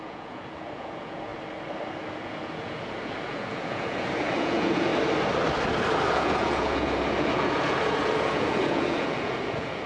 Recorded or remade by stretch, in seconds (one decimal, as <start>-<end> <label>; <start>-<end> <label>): 0.0-1.3 remade; 1.3-2.1 recorded; 2.1-4.9 remade; 4.9-6.1 recorded; 6.1-9.9 remade